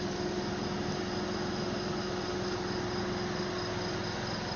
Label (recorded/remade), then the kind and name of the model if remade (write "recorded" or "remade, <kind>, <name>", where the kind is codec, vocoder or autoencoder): recorded